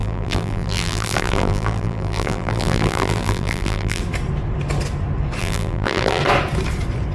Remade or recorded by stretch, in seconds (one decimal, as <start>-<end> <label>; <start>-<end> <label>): 0.0-4.0 remade; 4.0-5.4 recorded; 5.4-6.2 remade; 6.2-7.1 recorded